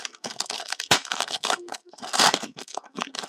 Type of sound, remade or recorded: remade